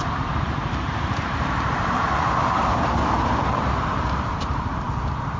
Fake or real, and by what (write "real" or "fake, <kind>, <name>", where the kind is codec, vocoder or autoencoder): fake, vocoder, BigVGAN v2